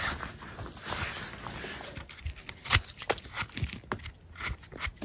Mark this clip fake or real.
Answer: real